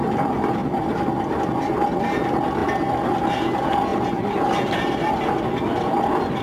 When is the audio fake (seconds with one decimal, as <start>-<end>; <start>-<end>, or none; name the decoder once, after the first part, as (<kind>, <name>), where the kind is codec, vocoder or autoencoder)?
none